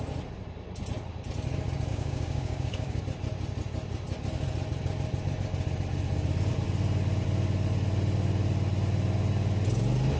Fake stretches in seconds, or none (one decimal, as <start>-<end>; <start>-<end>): 1.9-3.0